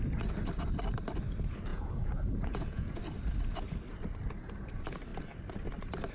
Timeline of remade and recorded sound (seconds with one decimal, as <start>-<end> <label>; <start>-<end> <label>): 0.0-1.7 recorded; 1.7-3.0 remade; 3.0-6.1 recorded